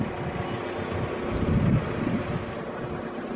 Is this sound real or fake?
real